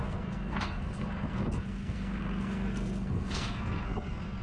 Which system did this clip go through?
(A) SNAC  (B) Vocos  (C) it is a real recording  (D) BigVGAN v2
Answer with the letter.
A